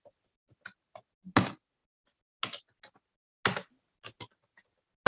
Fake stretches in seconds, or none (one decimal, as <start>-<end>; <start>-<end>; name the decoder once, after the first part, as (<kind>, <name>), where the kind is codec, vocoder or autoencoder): none